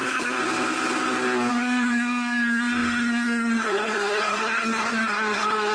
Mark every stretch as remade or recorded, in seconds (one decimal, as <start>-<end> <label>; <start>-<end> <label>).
0.0-0.4 remade; 0.4-1.5 recorded; 1.5-5.7 remade